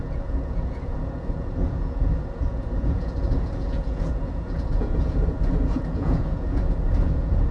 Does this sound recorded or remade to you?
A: remade